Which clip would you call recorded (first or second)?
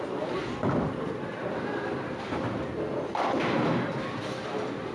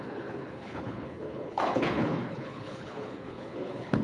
first